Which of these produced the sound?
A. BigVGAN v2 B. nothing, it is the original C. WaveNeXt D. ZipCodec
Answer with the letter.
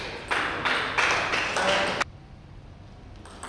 B